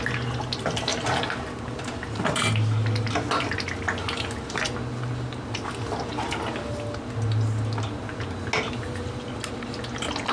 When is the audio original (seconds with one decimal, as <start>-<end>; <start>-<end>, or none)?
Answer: 0.0-10.3